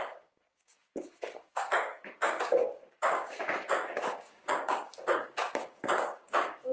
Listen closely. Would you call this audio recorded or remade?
remade